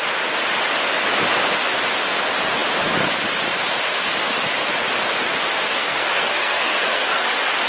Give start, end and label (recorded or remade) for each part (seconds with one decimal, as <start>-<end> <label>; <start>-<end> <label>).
0.0-5.8 recorded; 5.8-7.3 remade; 7.3-7.7 recorded